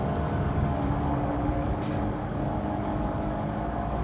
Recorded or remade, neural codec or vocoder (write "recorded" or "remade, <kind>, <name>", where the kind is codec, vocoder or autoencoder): remade, codec, DAC